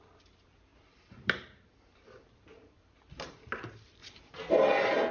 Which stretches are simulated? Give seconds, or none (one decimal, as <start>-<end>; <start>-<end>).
none